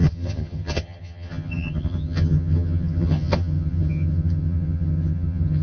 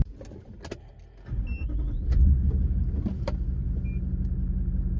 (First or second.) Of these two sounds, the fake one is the first